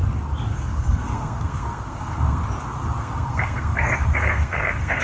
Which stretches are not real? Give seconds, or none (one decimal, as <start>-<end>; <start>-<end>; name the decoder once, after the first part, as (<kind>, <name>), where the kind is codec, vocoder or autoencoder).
0.6-2.4 (codec, SNAC); 3.0-5.0

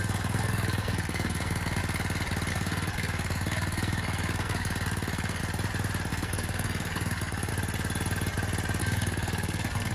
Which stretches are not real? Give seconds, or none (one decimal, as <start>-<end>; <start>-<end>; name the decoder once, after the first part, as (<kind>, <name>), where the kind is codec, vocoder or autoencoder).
0.0-1.8 (codec, SNAC); 2.5-5.4; 6.1-7.5; 8.8-9.9

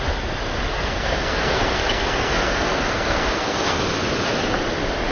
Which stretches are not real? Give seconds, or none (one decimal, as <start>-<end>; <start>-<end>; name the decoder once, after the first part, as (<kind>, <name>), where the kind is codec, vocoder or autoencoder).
0.7-3.8 (codec, SNAC)

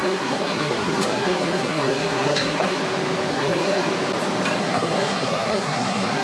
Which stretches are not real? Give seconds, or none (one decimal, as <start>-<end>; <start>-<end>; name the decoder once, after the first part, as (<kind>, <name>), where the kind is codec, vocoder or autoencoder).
0.0-2.8 (codec, SNAC); 3.3-3.9; 4.6-6.2

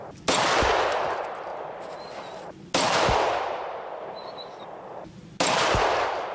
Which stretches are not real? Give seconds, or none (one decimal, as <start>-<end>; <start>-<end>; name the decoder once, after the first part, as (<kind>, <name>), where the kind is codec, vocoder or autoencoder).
none

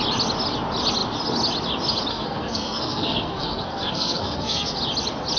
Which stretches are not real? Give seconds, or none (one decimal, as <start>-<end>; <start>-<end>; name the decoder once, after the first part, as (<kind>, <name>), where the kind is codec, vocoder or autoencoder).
2.1-4.8 (codec, SNAC)